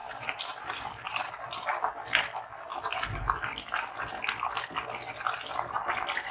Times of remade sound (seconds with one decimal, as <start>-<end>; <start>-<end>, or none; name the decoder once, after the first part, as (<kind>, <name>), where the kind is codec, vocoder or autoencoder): 0.0-1.3 (vocoder, BigVGAN v2)